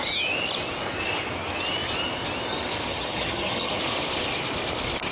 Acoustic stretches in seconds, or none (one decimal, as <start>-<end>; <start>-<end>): 0.0-2.9; 3.8-5.1